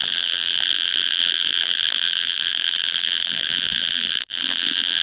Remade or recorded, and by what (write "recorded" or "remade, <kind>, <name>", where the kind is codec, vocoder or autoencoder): remade, vocoder, BigVGAN v2